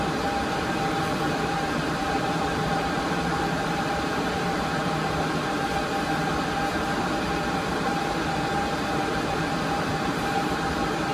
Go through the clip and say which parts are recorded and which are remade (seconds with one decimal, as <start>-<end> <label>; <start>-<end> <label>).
0.0-5.6 remade; 5.6-7.5 recorded; 7.5-11.1 remade